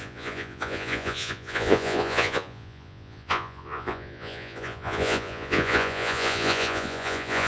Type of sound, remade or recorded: remade